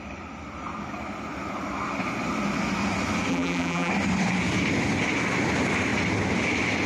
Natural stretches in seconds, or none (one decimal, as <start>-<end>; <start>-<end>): 0.0-3.3; 3.9-6.9